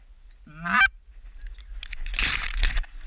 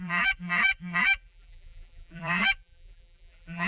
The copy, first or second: second